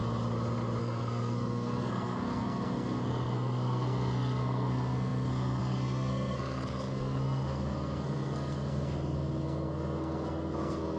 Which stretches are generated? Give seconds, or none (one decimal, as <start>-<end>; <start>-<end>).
0.8-11.0